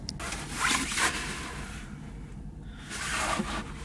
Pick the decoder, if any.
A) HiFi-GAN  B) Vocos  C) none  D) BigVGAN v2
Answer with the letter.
C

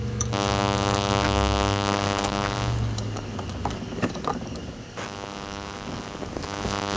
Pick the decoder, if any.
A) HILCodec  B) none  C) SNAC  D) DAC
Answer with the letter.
D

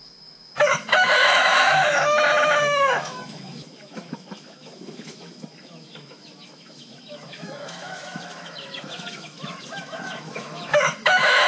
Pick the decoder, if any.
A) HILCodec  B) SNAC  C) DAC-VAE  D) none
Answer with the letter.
C